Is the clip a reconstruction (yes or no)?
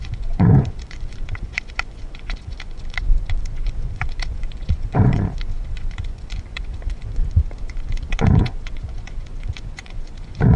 yes